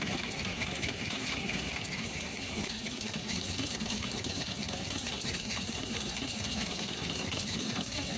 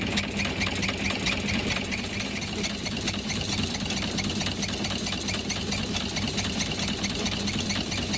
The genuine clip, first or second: second